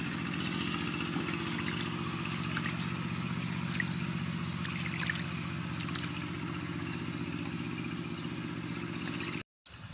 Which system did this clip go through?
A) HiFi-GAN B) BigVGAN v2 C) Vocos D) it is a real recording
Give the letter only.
D